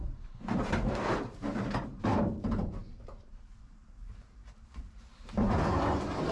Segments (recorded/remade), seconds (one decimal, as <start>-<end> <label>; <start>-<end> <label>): 0.0-6.3 remade